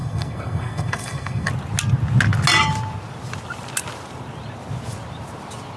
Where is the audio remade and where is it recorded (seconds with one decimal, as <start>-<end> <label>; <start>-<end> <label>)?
0.0-1.5 remade; 1.5-5.8 recorded